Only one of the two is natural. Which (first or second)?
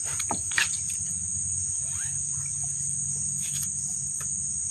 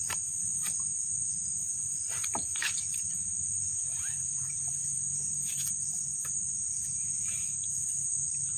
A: first